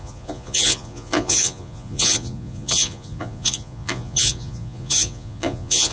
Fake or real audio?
fake